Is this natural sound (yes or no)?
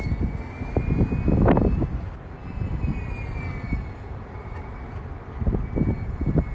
yes